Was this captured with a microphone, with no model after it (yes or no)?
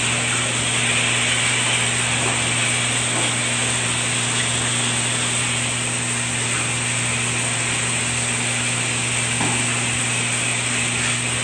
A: yes